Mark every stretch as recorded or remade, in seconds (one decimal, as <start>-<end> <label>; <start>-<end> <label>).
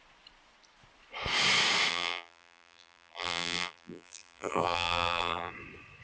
0.0-1.9 recorded; 1.9-5.5 remade; 5.5-6.0 recorded